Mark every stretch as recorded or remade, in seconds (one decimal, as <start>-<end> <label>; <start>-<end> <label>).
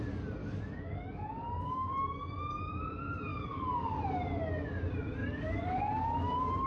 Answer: 0.0-0.4 recorded; 0.4-2.8 remade; 2.8-3.3 recorded; 3.3-4.0 remade; 4.0-5.2 recorded; 5.2-6.7 remade